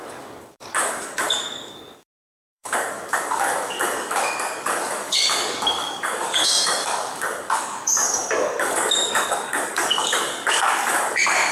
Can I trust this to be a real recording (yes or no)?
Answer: no